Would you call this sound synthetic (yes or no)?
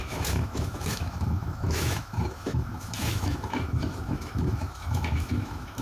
yes